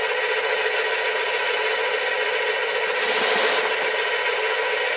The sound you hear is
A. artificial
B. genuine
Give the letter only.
B